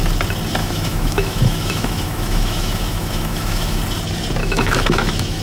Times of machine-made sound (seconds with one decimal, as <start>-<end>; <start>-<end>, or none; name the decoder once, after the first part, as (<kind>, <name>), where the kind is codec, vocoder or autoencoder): 0.6-3.8 (autoencoder, DAC-VAE); 4.4-5.4